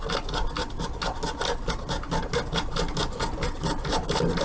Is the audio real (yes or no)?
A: yes